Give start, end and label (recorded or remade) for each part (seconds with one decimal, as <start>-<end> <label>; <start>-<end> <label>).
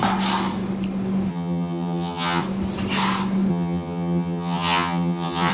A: 0.0-1.3 recorded; 1.3-2.4 remade; 2.4-3.5 recorded; 3.5-5.5 remade